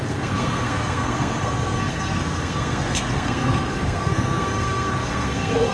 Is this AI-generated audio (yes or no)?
yes